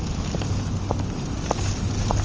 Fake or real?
real